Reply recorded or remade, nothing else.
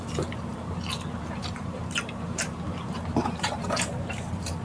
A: remade